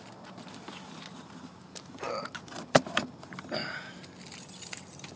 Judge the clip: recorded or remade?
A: recorded